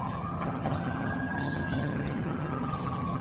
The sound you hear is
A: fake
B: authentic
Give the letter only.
A